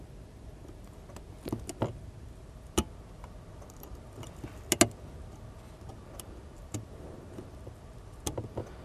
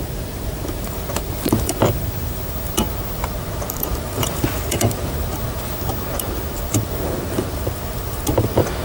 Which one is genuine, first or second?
first